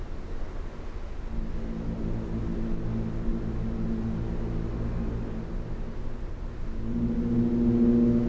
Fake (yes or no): no